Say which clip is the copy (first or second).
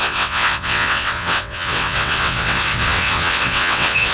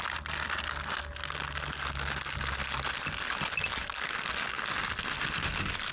first